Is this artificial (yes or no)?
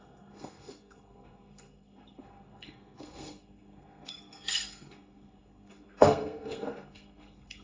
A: yes